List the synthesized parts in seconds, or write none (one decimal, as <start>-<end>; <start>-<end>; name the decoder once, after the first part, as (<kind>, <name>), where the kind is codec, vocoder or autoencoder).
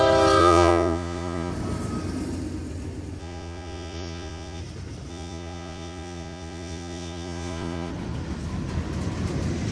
0.4-1.5 (vocoder, Vocos); 3.2-4.6; 5.1-7.9